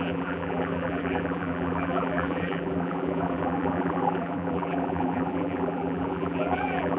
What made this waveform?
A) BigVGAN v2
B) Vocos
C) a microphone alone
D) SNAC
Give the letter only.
A